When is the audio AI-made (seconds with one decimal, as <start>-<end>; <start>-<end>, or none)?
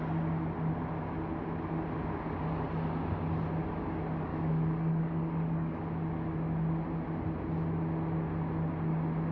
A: 4.3-5.8